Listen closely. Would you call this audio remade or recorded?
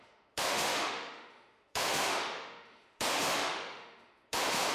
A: remade